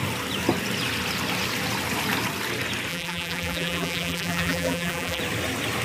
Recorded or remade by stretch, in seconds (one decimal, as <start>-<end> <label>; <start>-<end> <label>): 0.0-2.9 recorded; 2.9-5.2 remade; 5.2-5.8 recorded

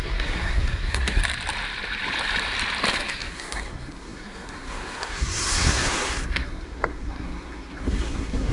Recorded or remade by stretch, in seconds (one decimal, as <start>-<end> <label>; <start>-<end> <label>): 0.0-1.2 remade; 1.2-2.9 recorded; 2.9-8.5 remade